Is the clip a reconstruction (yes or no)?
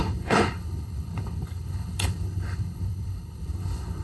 yes